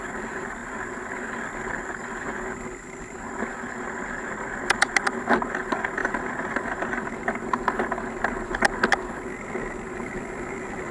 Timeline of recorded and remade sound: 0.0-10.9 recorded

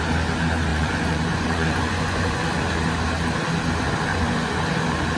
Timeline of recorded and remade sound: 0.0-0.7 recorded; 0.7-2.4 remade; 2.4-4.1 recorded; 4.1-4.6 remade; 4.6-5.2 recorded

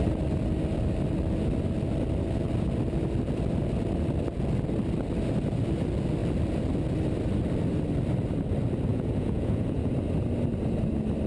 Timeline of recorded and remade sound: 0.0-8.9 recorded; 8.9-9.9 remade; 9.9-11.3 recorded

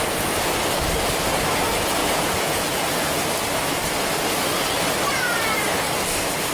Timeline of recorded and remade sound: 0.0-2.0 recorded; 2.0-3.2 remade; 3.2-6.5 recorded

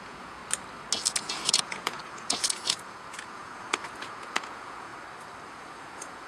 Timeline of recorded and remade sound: 0.0-0.4 remade; 0.4-1.2 recorded; 1.2-4.9 remade; 4.9-5.5 recorded; 5.5-6.3 remade